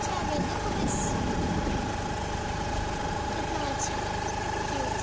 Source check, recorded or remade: recorded